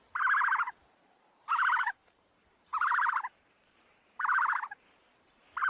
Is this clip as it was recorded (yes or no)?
no